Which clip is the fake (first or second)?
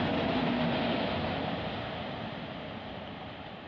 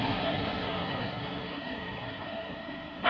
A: second